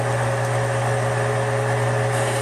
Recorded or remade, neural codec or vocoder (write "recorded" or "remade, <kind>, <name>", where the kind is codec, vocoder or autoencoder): recorded